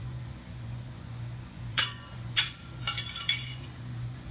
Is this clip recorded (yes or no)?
no